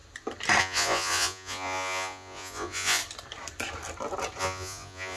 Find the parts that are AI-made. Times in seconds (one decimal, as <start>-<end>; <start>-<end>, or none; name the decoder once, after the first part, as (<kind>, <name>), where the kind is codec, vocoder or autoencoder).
0.6-3.0 (vocoder, Vocos); 4.4-5.2